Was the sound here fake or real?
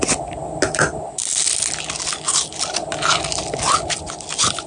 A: real